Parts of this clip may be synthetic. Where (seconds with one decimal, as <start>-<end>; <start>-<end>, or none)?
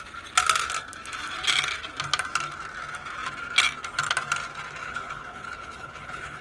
4.8-6.4